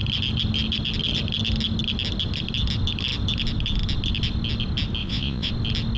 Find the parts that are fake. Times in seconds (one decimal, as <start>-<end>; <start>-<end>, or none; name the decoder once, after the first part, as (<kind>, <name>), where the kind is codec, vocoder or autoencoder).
5.0-5.5 (vocoder, Vocos)